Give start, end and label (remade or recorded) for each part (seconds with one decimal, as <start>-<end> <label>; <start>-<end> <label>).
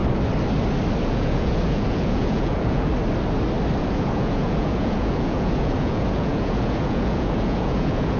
0.0-1.0 recorded; 1.0-2.9 remade; 2.9-3.8 recorded; 3.8-8.2 remade